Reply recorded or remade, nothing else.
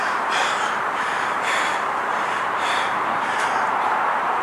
remade